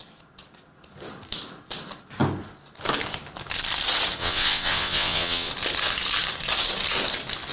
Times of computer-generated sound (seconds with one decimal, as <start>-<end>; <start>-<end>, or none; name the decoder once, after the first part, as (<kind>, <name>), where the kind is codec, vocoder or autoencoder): 4.2-5.5 (vocoder, WaveNeXt)